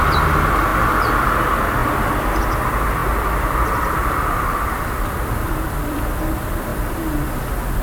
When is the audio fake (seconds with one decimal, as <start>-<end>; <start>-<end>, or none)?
0.7-1.3; 1.8-2.4; 3.0-6.0; 6.7-7.8